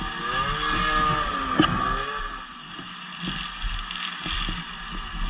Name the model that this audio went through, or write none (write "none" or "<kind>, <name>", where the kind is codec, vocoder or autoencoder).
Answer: none